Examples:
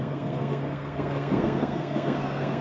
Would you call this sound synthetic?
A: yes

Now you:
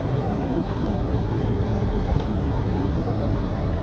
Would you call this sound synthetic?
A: yes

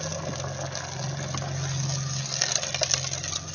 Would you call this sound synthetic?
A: no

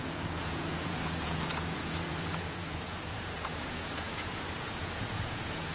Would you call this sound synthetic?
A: yes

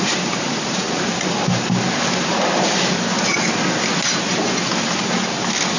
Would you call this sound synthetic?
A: no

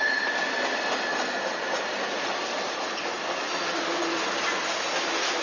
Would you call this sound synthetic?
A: no